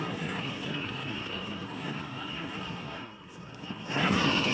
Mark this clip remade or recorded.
remade